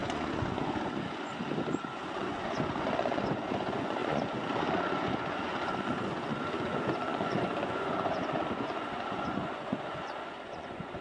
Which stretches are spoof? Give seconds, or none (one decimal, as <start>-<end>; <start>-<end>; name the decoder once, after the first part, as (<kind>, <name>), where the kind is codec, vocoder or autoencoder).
0.0-1.3 (vocoder, Vocos); 1.8-11.0

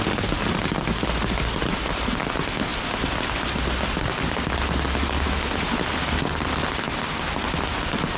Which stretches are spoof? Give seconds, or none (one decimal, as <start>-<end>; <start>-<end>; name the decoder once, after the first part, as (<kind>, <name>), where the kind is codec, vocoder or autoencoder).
none

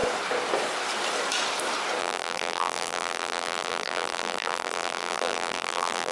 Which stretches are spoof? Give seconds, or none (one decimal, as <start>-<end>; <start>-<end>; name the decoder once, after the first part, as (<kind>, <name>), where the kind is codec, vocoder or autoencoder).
2.0-6.1 (vocoder, BigVGAN v2)

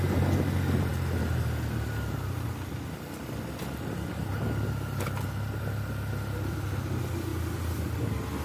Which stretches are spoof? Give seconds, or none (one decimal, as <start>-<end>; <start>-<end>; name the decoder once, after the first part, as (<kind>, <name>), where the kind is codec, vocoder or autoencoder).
none

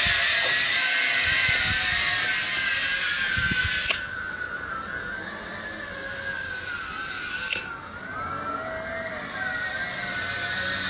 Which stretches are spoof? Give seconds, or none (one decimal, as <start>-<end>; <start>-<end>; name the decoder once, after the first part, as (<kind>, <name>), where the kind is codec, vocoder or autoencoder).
none

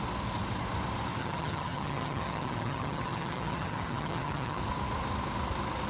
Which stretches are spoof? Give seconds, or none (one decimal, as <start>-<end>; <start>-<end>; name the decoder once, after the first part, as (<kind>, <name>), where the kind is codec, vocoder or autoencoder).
1.2-4.6 (vocoder, HiFi-GAN)